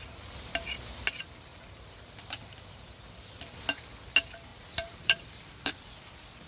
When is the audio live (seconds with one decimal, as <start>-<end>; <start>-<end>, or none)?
0.0-1.5; 2.8-4.5; 6.0-6.5